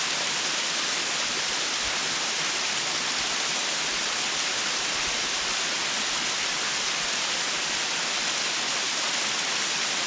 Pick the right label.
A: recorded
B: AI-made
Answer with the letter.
A